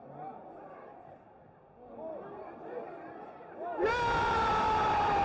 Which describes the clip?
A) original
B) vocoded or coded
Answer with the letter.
A